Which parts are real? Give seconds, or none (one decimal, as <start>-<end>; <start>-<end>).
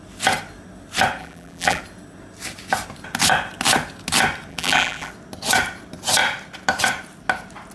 0.0-1.2; 1.8-4.5; 5.1-7.7